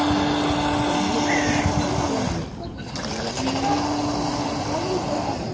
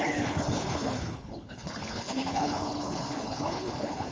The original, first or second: first